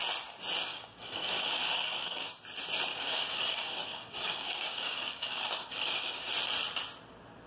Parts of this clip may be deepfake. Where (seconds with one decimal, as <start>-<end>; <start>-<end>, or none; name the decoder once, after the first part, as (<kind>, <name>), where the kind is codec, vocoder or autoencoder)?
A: 0.7-2.3 (codec, DAC); 2.9-6.3